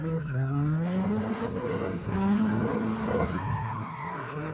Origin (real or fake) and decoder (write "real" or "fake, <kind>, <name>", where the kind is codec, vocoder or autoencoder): fake, codec, SNAC